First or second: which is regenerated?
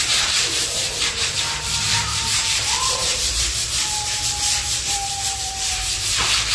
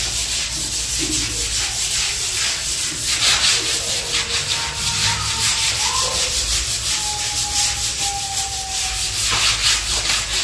first